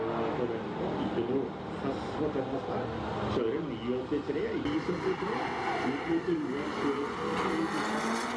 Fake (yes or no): no